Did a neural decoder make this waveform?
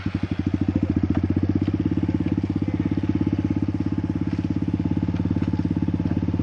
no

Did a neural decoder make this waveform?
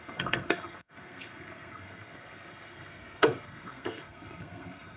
yes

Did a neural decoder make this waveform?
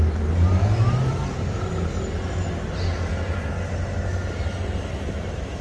no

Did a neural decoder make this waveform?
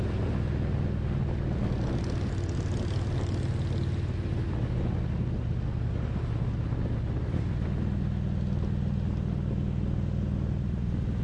no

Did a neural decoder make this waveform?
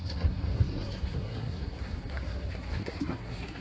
yes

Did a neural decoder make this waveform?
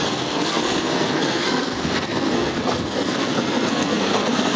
yes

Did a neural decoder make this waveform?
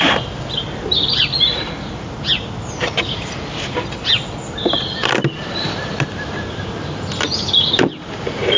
no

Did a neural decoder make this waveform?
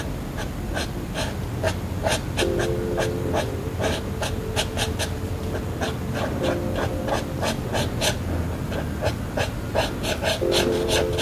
no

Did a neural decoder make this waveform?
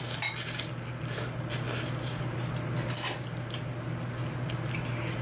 no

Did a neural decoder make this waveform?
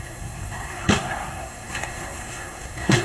yes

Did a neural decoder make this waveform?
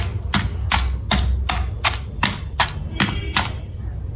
no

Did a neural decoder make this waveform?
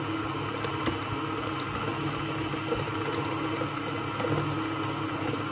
no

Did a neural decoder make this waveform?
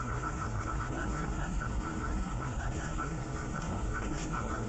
yes